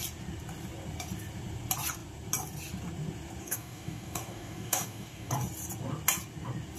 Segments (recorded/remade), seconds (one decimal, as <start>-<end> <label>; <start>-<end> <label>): 0.0-3.4 recorded; 3.4-5.3 remade; 5.3-6.8 recorded